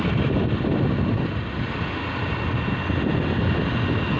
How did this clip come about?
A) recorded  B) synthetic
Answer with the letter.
A